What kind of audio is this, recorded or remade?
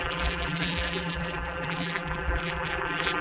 remade